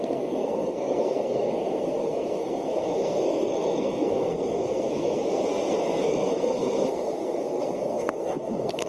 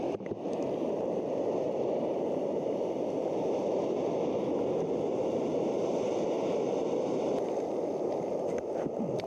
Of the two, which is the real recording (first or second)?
second